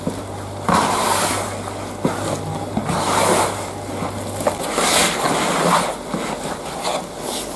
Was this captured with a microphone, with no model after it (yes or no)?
yes